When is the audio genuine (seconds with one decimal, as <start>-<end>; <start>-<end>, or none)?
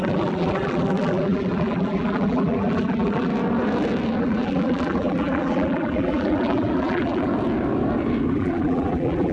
3.3-4.2; 7.3-8.3